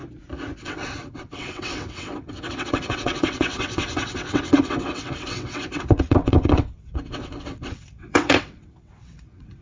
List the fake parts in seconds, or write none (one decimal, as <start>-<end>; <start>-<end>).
0.6-9.6